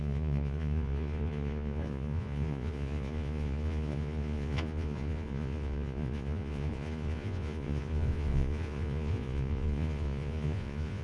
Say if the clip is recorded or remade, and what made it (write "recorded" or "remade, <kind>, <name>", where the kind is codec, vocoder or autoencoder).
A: remade, vocoder, Vocos